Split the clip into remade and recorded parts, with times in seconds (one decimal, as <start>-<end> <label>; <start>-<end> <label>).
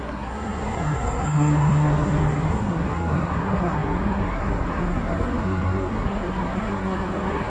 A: 0.0-7.5 remade